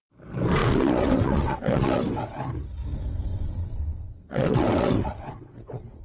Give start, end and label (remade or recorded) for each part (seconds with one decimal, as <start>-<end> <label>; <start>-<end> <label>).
0.0-0.6 recorded; 0.6-2.0 remade; 2.0-3.3 recorded; 3.3-6.0 remade